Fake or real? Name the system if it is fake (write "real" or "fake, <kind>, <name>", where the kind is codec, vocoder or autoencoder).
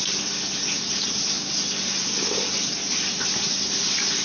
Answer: real